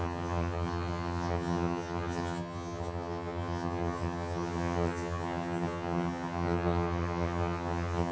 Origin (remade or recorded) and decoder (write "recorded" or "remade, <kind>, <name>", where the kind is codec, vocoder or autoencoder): remade, vocoder, HiFi-GAN